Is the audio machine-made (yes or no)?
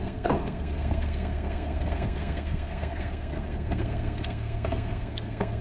yes